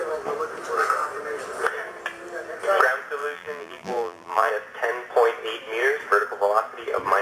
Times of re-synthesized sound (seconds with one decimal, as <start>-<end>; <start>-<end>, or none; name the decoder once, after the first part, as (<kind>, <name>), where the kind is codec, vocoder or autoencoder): 3.2-4.5 (vocoder, BigVGAN v2)